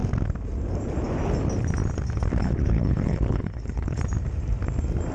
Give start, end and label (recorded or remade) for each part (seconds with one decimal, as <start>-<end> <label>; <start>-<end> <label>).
0.0-2.4 recorded; 2.4-4.0 remade; 4.0-5.1 recorded